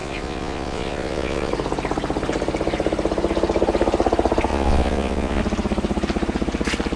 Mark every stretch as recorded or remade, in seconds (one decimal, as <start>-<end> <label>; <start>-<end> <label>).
0.0-1.5 remade; 1.5-4.5 recorded; 4.5-5.4 remade; 5.4-7.0 recorded